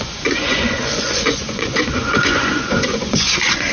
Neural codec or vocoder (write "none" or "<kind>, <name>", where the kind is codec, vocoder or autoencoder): vocoder, Vocos